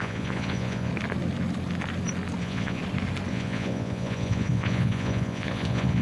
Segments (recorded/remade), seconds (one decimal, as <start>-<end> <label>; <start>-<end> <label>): 0.0-0.9 remade; 0.9-2.4 recorded; 2.4-2.8 remade; 2.8-3.3 recorded; 3.3-6.0 remade